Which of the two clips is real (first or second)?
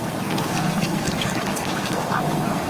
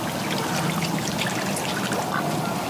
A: second